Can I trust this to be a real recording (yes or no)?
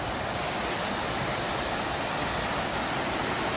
yes